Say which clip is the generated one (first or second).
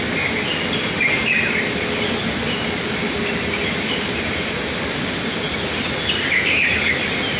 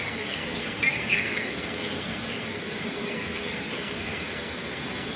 second